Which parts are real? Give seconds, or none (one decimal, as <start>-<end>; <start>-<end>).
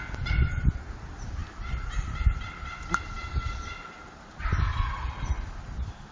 0.0-6.1